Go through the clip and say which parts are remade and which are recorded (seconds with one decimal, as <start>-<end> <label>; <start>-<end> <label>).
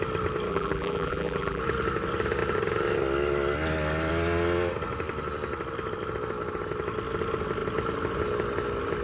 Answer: 0.0-0.5 recorded; 0.5-1.6 remade; 1.6-9.0 recorded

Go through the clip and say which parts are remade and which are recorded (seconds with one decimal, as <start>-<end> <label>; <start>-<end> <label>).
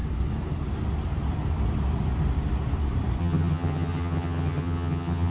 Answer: 0.0-3.2 recorded; 3.2-5.3 remade